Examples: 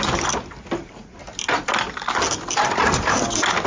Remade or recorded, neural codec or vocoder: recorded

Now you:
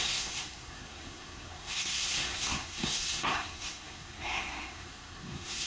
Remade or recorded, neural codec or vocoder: remade, codec, SNAC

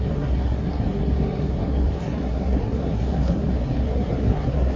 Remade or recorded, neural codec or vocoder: remade, codec, SNAC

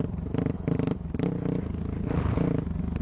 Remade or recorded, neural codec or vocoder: recorded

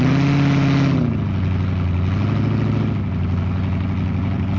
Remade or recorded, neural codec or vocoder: recorded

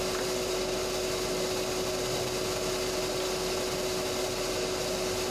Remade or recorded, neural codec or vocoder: recorded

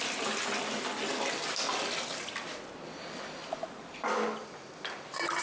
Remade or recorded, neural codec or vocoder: recorded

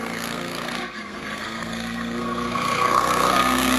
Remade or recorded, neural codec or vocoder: remade, codec, SNAC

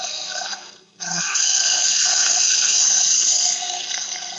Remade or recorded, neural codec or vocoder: remade, codec, SNAC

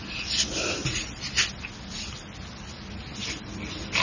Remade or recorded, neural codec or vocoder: recorded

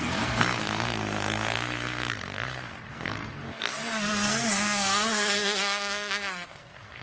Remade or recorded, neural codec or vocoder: remade, codec, SNAC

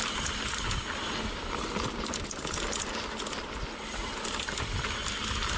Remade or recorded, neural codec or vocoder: recorded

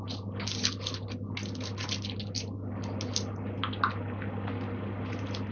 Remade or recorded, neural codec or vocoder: recorded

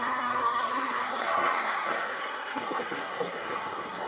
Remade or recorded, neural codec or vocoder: remade, codec, SNAC